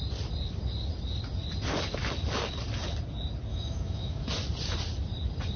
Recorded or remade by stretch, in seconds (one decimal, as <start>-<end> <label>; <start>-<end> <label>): 0.0-3.5 recorded; 3.5-4.3 remade; 4.3-5.6 recorded